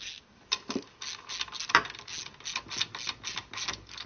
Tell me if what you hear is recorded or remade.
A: recorded